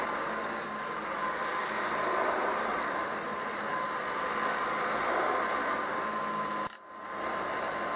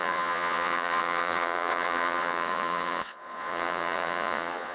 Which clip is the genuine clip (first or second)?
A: first